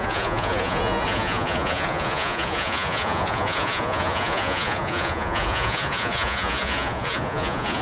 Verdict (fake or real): fake